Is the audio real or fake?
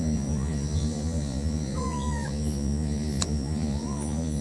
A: fake